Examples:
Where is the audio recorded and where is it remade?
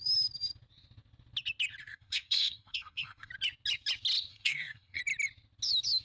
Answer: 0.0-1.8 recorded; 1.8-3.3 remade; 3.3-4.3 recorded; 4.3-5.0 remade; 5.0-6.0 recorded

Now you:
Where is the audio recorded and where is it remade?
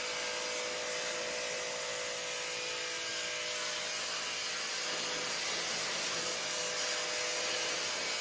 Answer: 0.0-8.2 recorded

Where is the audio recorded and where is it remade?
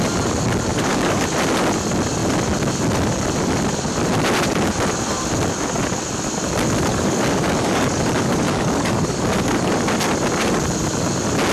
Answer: 0.0-0.7 recorded; 0.7-1.3 remade; 1.3-6.9 recorded; 6.9-9.7 remade; 9.7-11.5 recorded